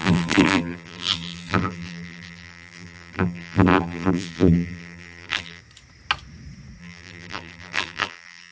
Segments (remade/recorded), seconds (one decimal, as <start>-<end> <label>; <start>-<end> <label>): 0.0-5.6 remade; 5.6-6.8 recorded; 6.8-8.5 remade